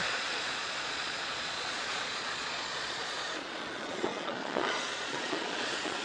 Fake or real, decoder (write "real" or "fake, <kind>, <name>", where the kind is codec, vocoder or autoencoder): fake, vocoder, Vocos